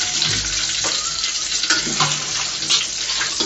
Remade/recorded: recorded